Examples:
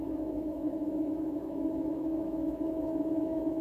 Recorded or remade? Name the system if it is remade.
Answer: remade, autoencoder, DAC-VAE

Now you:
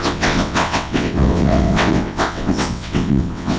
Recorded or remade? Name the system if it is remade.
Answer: remade, vocoder, WaveNeXt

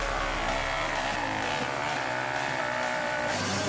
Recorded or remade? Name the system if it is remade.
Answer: recorded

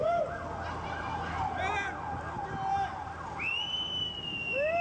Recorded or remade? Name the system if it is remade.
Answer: recorded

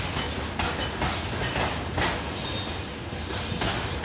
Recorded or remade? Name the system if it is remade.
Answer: recorded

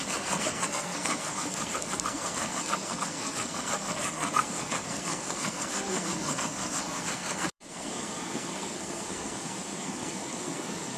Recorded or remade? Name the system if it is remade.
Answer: remade, codec, SNAC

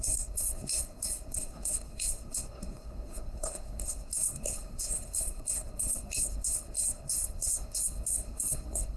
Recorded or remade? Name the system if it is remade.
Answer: remade, codec, SNAC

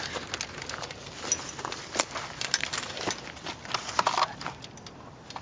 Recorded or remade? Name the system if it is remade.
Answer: recorded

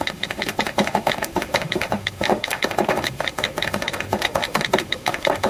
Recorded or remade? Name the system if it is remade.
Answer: remade, autoencoder, DAC-VAE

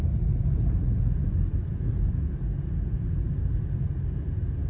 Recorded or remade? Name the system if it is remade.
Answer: recorded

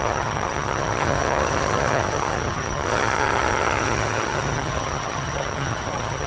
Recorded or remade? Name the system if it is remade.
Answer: remade, vocoder, HiFi-GAN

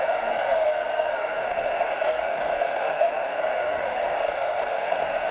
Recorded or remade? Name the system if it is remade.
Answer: remade, codec, SNAC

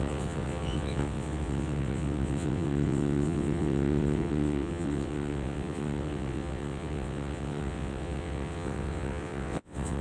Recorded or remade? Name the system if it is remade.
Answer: remade, vocoder, WaveNeXt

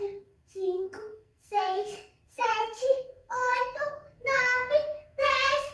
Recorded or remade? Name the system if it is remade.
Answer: remade, codec, SNAC